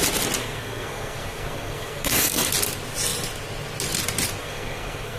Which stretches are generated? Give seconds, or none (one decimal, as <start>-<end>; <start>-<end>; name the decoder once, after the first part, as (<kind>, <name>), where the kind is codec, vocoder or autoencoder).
0.4-2.5 (codec, SNAC); 4.4-5.2

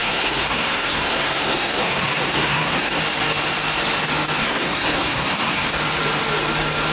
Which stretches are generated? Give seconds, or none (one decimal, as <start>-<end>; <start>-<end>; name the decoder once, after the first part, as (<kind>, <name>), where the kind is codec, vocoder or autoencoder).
0.0-3.0 (codec, SNAC); 4.4-5.7

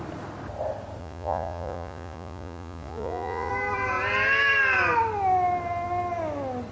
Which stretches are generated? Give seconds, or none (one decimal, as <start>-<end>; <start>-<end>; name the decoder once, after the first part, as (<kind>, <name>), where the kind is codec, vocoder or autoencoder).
1.0-3.5 (vocoder, Vocos)

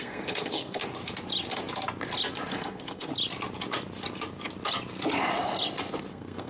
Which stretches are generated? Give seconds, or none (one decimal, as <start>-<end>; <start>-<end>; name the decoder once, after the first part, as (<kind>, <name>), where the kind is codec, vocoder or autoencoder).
0.0-0.8 (codec, SNAC); 2.5-3.1; 6.1-6.5

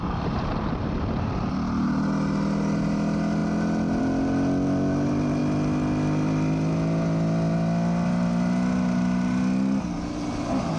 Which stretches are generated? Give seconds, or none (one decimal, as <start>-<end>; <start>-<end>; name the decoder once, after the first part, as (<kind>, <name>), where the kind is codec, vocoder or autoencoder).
none

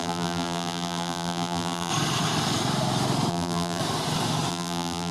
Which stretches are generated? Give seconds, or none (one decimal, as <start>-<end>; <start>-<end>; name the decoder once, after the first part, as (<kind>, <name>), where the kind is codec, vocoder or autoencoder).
0.0-1.9 (vocoder, BigVGAN v2); 3.3-3.8; 4.5-5.1

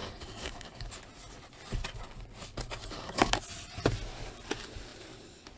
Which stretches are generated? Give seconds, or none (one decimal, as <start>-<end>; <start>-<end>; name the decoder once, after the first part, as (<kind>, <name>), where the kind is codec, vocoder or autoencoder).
0.0-0.9 (codec, DAC); 2.8-3.4

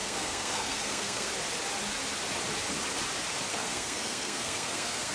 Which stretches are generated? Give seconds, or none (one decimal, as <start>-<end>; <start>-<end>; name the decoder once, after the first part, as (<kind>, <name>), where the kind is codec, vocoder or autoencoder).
0.0-1.3 (codec, SNAC); 3.5-5.1